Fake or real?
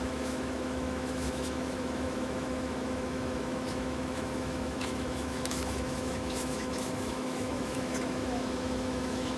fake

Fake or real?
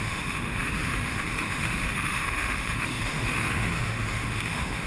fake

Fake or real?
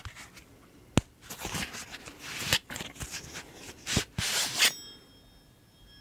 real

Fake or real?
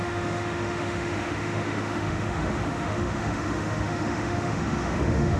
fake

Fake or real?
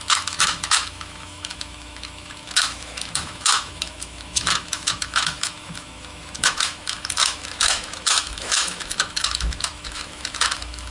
fake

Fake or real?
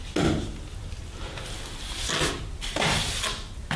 real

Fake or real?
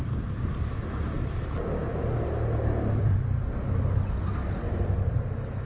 real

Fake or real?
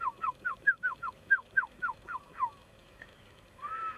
fake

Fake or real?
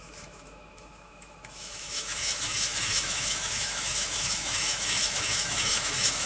fake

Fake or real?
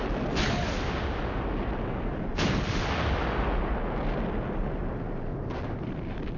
real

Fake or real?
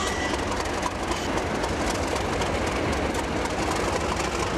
real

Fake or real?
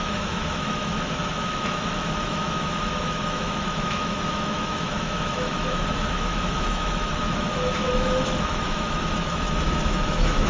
fake